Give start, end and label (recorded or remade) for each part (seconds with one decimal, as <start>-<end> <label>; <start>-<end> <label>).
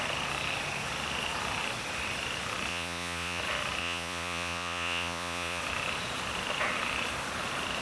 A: 0.0-2.7 recorded; 2.7-3.4 remade; 3.4-3.8 recorded; 3.8-5.6 remade; 5.6-7.8 recorded